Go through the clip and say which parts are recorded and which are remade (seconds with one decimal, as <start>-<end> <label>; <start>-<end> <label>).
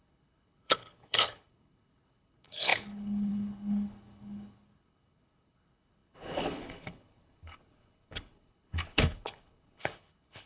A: 0.0-10.5 remade